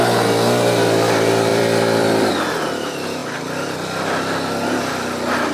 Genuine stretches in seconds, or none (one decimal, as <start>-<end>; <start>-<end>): 0.0-1.5; 2.3-5.5